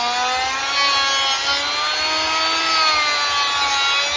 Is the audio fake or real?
real